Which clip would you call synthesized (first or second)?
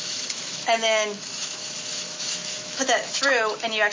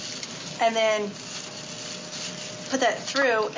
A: first